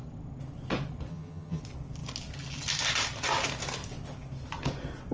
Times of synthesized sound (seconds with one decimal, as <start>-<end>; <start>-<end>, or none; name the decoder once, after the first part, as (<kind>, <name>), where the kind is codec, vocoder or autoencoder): 1.1-1.6 (vocoder, HiFi-GAN)